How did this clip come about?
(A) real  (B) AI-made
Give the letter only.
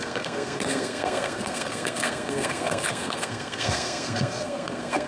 B